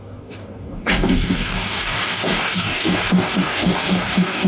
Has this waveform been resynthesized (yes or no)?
yes